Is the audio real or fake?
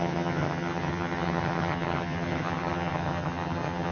fake